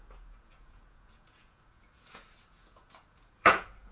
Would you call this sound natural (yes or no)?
no